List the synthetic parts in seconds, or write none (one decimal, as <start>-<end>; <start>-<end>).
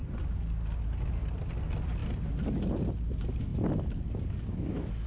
none